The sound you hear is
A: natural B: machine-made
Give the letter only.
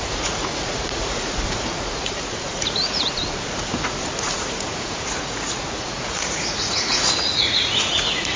B